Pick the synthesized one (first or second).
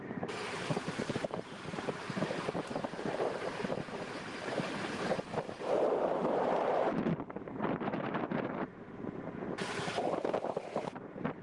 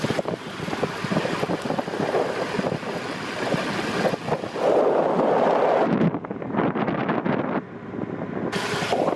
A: first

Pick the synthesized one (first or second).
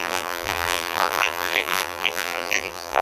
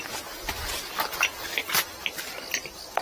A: first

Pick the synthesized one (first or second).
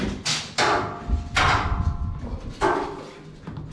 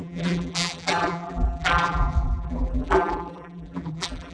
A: second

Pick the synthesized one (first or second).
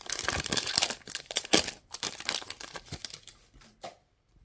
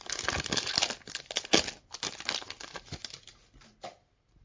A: first